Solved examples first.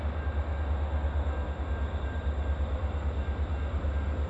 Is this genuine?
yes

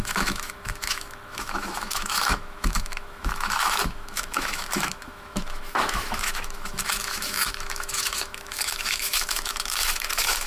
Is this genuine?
no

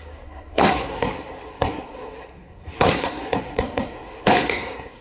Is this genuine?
no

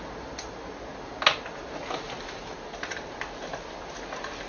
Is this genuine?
yes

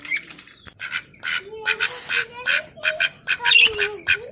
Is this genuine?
yes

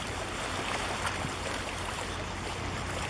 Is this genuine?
yes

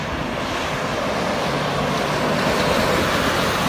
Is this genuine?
yes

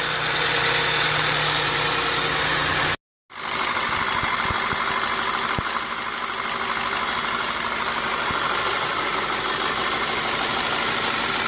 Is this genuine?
yes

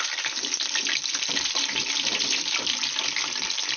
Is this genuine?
yes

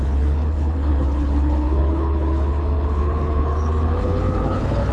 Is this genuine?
no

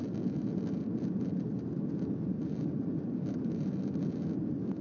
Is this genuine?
yes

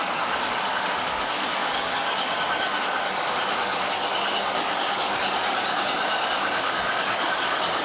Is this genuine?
no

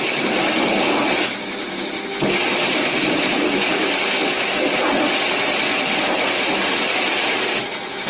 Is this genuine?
yes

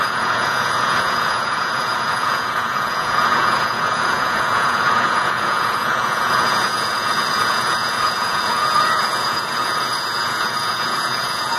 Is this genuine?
no